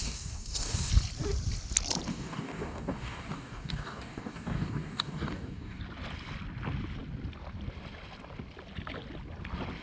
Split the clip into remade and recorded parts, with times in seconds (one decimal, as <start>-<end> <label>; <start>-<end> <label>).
0.0-0.9 remade; 0.9-2.1 recorded; 2.1-5.8 remade; 5.8-9.8 recorded